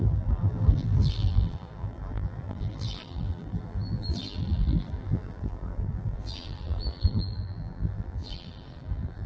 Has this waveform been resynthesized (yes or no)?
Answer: yes